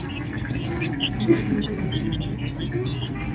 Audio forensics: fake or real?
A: fake